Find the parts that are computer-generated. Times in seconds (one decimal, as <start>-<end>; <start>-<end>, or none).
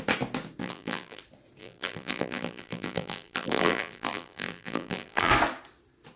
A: 0.6-1.2; 1.6-5.3